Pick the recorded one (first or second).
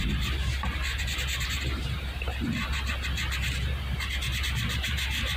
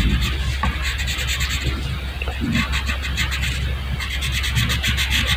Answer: second